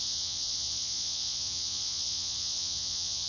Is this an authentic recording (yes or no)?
no